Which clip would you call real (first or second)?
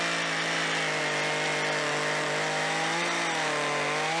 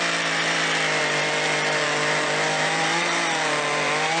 first